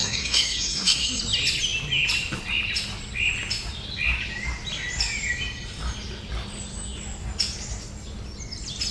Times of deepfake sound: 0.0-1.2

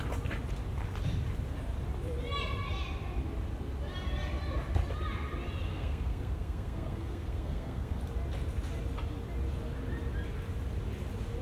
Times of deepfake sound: 5.7-8.0

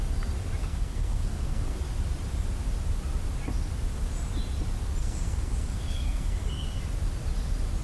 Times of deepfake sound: 0.6-1.8; 5.0-6.8